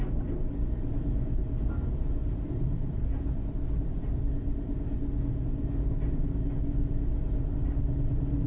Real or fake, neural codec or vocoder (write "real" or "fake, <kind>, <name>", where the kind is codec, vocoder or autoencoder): real